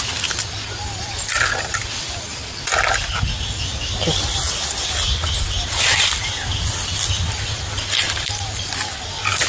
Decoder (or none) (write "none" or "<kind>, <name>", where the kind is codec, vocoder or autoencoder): none